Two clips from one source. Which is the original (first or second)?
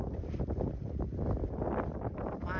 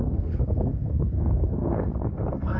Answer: first